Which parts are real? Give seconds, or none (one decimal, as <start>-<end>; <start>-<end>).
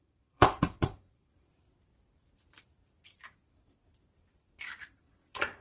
1.5-4.9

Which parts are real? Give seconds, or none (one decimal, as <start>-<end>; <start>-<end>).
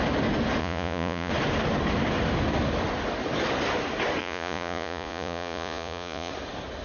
0.0-0.6; 1.3-4.2; 6.3-6.8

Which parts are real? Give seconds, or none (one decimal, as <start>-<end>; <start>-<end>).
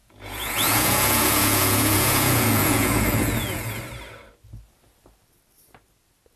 3.8-6.4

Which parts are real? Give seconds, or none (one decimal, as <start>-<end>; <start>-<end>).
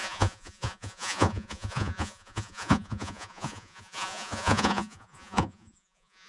none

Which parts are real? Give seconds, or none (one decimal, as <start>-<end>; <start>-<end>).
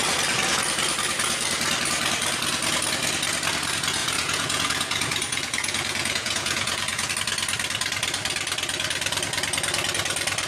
0.0-4.0; 7.1-10.5